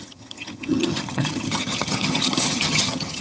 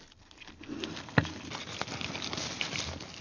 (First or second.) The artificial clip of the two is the first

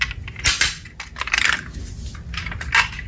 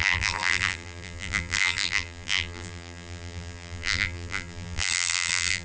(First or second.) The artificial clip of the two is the second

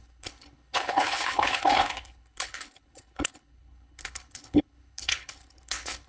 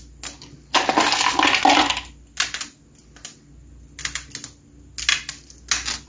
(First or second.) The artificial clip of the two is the first